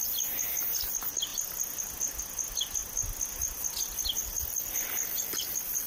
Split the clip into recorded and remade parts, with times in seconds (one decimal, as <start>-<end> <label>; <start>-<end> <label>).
0.0-4.2 recorded; 4.2-5.2 remade; 5.2-5.9 recorded